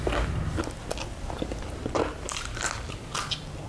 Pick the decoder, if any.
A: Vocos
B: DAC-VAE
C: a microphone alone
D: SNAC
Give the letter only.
C